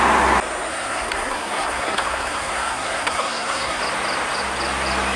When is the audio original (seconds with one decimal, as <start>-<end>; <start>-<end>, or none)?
0.0-0.7; 3.8-5.2